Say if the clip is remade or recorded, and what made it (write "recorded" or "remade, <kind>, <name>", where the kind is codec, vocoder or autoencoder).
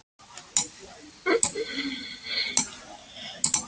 recorded